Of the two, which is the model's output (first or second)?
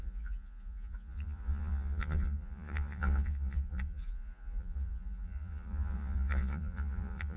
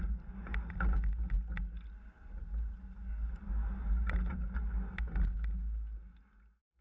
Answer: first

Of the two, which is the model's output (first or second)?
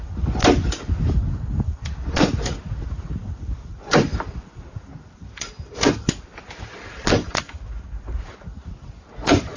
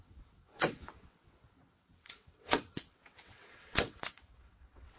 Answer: second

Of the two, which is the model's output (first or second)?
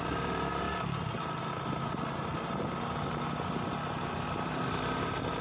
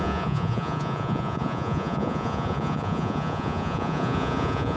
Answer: second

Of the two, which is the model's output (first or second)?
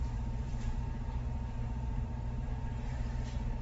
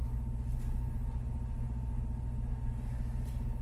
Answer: first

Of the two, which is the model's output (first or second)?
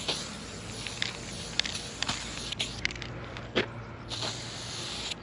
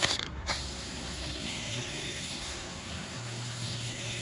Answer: second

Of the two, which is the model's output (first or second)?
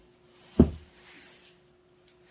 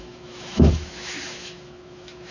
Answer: second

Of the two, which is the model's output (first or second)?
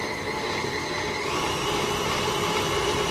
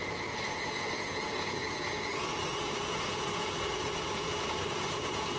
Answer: second